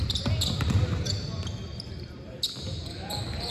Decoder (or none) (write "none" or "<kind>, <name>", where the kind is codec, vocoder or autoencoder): none